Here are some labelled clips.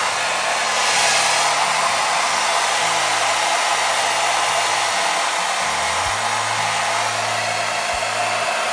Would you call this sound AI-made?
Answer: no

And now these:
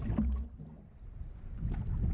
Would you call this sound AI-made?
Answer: no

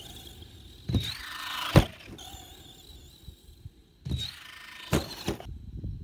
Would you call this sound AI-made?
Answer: no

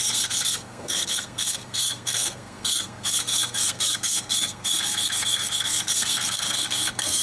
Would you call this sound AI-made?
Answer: yes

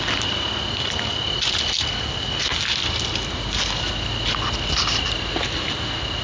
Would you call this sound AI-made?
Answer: no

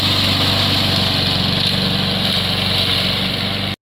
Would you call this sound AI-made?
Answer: no